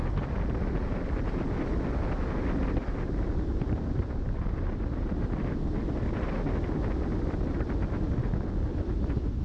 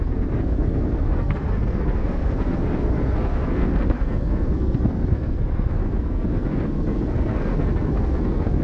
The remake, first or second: second